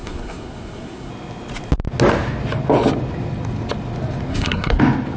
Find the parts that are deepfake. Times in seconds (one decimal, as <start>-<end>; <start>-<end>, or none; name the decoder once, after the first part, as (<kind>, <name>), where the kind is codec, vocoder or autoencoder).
0.0-1.1 (codec, SNAC); 4.3-4.8